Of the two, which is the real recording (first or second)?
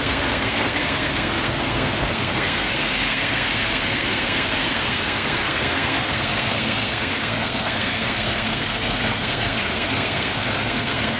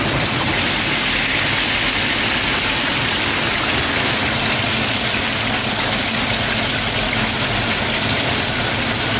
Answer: second